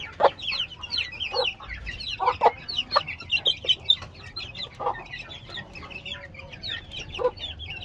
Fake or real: real